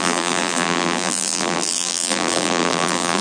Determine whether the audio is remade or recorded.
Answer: remade